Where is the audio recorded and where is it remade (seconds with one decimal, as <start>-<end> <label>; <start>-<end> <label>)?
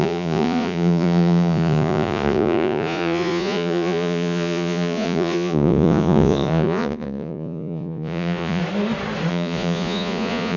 0.0-8.6 remade; 8.6-9.3 recorded; 9.3-10.6 remade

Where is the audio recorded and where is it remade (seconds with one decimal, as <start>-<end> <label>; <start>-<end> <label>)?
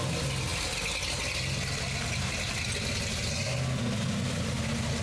0.0-5.0 recorded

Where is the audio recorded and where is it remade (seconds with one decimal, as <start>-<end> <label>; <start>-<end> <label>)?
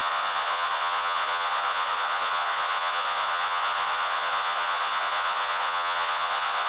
0.0-6.7 remade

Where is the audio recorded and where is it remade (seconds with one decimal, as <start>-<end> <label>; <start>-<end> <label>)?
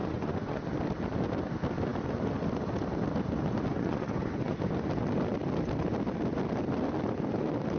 0.0-0.6 remade; 0.6-3.7 recorded; 3.7-4.6 remade; 4.6-7.8 recorded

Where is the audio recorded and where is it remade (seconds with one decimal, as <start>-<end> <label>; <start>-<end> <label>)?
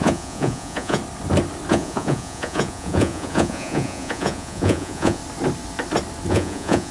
0.0-1.0 remade; 1.0-1.7 recorded; 1.7-5.2 remade; 5.2-6.3 recorded; 6.3-6.9 remade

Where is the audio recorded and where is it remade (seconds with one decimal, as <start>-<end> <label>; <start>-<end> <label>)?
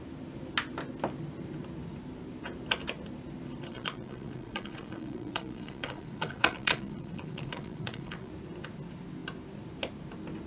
0.0-3.7 recorded; 3.7-8.3 remade; 8.3-10.5 recorded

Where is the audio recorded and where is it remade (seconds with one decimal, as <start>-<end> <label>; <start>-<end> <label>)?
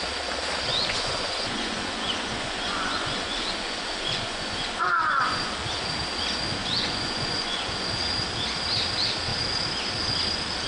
0.0-0.7 recorded; 0.7-5.5 remade; 5.5-6.6 recorded; 6.6-7.9 remade; 7.9-10.7 recorded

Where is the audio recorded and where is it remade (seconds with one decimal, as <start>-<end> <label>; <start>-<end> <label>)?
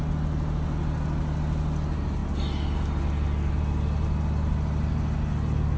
0.0-5.8 recorded